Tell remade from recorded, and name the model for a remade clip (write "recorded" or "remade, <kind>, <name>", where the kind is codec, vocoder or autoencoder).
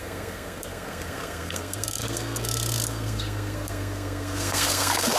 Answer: remade, codec, SNAC